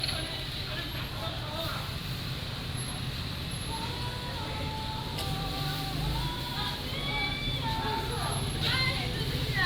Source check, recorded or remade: recorded